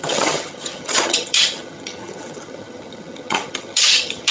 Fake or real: fake